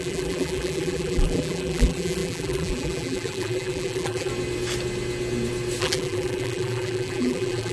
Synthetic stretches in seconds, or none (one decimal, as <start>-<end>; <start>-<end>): 0.0-4.3; 5.8-7.7